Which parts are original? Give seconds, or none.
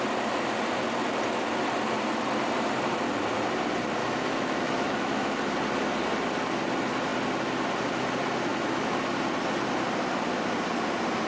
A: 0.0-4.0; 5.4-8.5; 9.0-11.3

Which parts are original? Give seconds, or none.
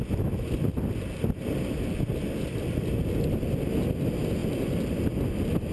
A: 0.0-5.7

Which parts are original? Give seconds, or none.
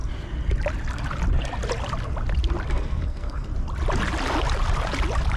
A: 0.0-2.7; 3.5-5.4